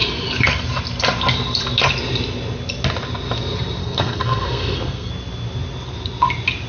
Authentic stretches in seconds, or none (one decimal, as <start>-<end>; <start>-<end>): 0.0-3.8; 5.1-6.7